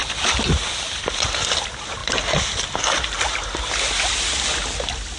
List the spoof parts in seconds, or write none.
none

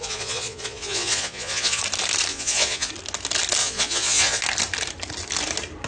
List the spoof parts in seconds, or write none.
0.0-1.8 (vocoder, Vocos); 2.3-2.9; 3.6-4.4

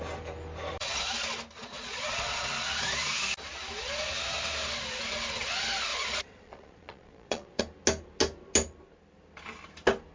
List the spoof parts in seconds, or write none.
1.6-2.5 (vocoder, Vocos); 5.9-7.6

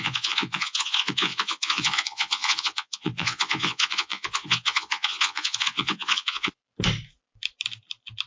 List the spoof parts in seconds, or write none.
0.0-6.6 (vocoder, Vocos)

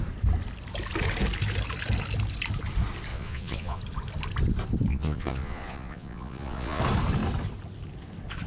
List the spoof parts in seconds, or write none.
3.1-3.8 (vocoder, Vocos); 4.9-6.8